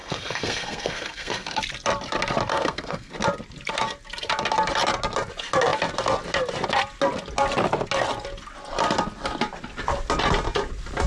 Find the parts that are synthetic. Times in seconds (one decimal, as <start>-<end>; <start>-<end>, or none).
0.0-1.6; 2.5-3.1